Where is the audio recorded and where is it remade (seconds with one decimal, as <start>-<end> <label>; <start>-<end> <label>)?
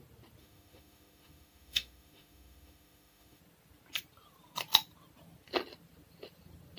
0.0-0.4 recorded; 0.4-3.4 remade; 3.4-6.8 recorded